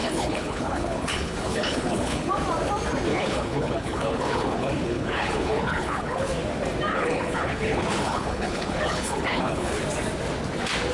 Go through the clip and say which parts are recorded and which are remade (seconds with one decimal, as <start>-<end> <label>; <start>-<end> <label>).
0.0-2.3 remade; 2.3-3.1 recorded; 3.1-6.3 remade; 6.3-6.9 recorded; 6.9-9.7 remade; 9.7-10.9 recorded